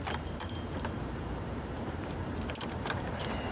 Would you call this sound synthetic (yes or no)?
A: yes